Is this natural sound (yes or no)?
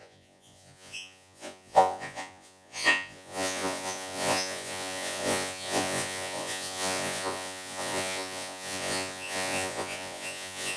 no